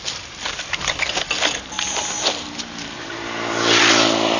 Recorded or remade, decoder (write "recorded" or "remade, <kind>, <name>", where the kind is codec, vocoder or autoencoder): recorded